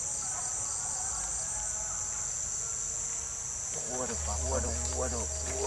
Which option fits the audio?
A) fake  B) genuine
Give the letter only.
B